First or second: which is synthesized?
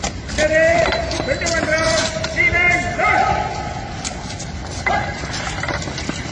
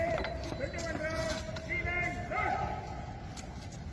first